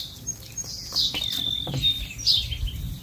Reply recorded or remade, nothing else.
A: recorded